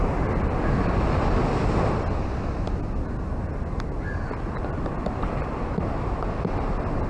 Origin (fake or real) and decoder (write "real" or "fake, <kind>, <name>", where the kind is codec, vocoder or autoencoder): real